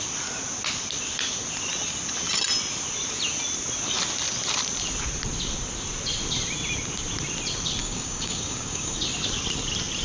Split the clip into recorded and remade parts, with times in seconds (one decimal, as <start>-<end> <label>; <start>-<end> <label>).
0.0-7.8 recorded; 7.8-9.0 remade; 9.0-10.0 recorded